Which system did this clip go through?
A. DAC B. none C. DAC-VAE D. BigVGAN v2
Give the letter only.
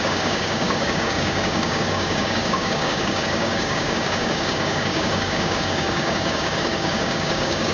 A